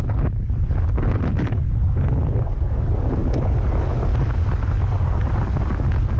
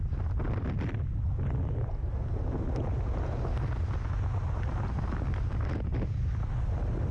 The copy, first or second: first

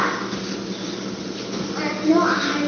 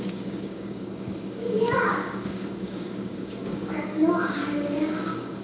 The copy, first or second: second